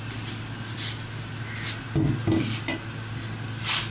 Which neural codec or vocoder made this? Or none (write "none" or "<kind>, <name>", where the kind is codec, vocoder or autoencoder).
none